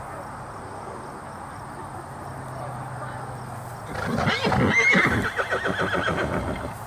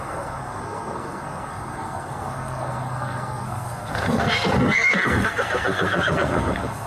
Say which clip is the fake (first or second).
second